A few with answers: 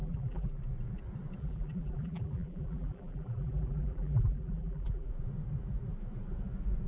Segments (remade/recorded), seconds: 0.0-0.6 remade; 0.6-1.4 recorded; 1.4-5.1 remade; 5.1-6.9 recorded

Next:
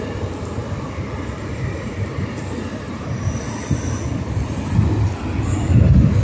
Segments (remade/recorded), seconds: 0.0-6.2 recorded

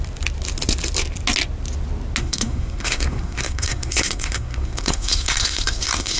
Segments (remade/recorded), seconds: 0.0-2.2 recorded; 2.2-6.2 remade

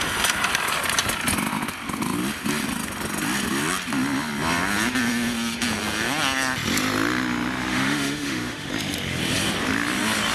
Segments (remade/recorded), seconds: 0.0-7.7 recorded; 7.7-8.7 remade; 8.7-10.3 recorded

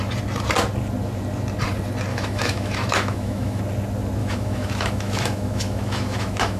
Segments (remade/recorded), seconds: 0.0-2.1 recorded; 2.1-3.6 remade; 3.6-4.2 recorded; 4.2-6.6 remade

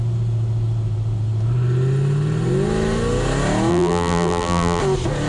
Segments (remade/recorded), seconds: 0.0-3.7 recorded; 3.7-4.8 remade; 4.8-5.3 recorded